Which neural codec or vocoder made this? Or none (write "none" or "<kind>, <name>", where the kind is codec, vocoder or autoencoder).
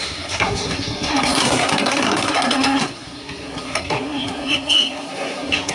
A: codec, SNAC